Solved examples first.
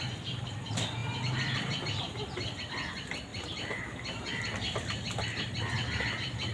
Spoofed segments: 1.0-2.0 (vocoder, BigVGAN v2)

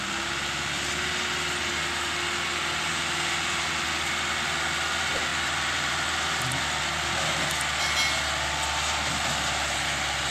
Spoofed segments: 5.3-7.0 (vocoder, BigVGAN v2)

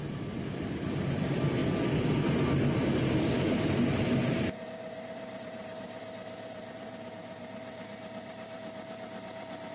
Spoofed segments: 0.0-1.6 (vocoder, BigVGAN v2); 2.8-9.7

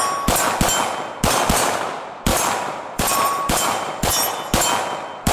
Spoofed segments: 2.3-4.1 (vocoder, BigVGAN v2)